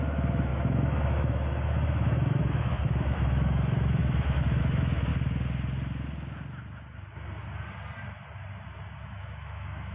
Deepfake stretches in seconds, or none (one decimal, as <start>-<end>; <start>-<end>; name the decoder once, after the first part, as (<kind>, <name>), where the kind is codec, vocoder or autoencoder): 0.0-5.1 (autoencoder, DAC-VAE); 9.1-9.9